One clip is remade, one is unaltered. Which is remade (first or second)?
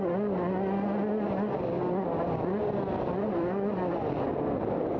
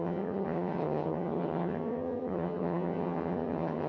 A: second